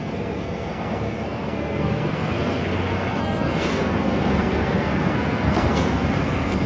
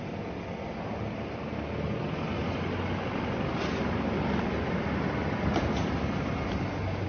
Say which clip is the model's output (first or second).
first